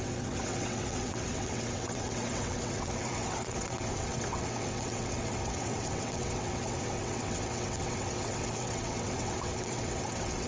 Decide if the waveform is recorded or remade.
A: remade